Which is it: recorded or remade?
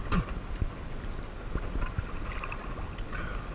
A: recorded